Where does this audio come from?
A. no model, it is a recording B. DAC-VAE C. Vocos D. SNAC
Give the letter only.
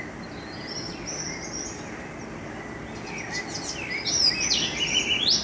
A